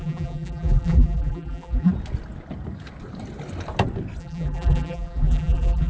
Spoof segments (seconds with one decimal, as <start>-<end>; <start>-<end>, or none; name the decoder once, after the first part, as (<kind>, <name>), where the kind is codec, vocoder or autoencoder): 0.0-1.9 (vocoder, BigVGAN v2); 4.2-5.9